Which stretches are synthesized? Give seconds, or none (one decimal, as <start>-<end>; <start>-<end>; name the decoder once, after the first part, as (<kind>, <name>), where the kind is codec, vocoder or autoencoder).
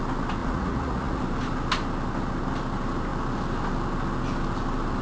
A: 0.4-1.2 (vocoder, Vocos)